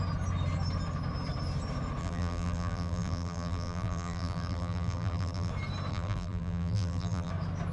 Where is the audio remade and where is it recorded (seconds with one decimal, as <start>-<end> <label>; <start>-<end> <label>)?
0.0-2.0 recorded; 2.0-5.5 remade; 5.5-5.9 recorded; 5.9-7.3 remade; 7.3-7.7 recorded